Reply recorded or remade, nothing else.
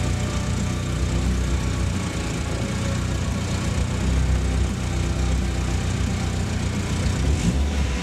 recorded